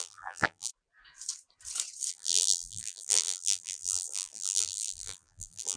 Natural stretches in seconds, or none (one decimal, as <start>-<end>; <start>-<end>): 0.7-2.1